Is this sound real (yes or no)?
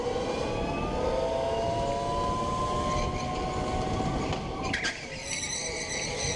yes